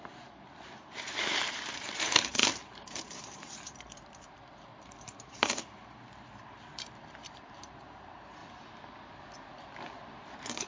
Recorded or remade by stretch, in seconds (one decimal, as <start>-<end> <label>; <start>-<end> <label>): 0.0-8.4 remade; 8.4-10.7 recorded